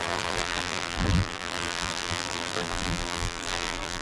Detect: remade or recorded remade